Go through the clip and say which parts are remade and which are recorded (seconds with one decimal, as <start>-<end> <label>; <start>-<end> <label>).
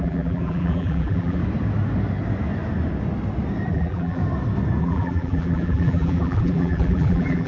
0.0-1.4 remade; 1.4-3.7 recorded; 3.7-4.2 remade; 4.2-4.8 recorded; 4.8-7.5 remade